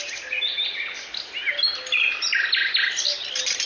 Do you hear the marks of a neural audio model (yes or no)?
no